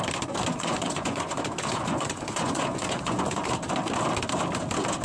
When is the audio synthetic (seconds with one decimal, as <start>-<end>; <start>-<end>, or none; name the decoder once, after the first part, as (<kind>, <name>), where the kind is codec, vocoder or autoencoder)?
0.5-3.5 (vocoder, Vocos)